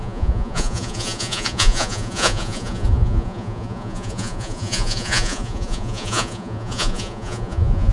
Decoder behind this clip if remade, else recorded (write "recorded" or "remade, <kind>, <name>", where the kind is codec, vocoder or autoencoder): remade, vocoder, Vocos